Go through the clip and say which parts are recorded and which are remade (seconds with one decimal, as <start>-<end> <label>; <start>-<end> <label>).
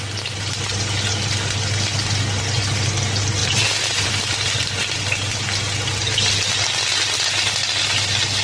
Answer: 0.0-3.4 recorded; 3.4-4.1 remade; 4.1-8.4 recorded